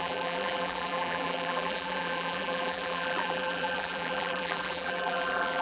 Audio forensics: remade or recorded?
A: remade